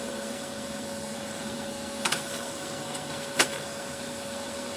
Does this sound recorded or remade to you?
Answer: remade